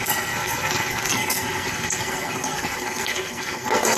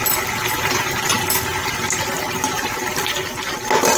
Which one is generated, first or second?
first